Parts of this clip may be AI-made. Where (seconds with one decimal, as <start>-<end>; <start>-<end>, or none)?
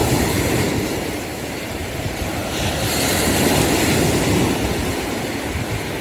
0.0-3.6